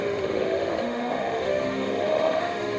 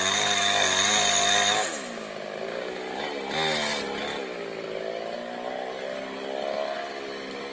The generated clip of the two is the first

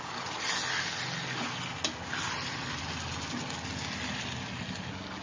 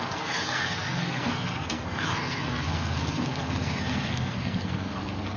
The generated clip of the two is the second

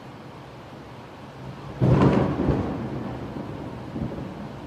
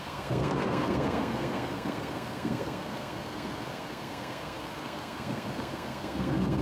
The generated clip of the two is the second